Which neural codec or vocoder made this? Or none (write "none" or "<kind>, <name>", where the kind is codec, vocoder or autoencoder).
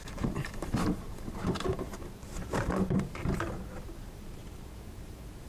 vocoder, BigVGAN v2